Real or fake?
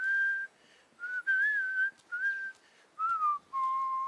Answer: real